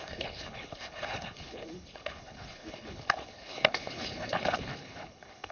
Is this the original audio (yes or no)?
no